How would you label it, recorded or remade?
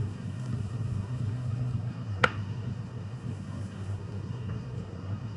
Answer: remade